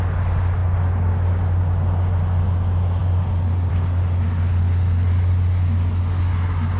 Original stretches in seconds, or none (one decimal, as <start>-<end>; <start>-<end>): 0.0-6.8